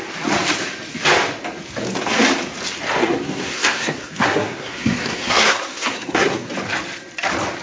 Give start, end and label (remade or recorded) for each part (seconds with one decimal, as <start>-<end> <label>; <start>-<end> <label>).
0.0-3.0 recorded; 3.0-6.5 remade; 6.5-7.6 recorded